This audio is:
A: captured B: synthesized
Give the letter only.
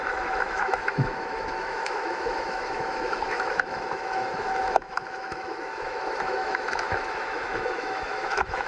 B